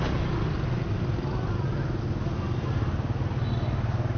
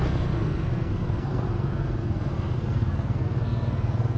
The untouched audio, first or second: first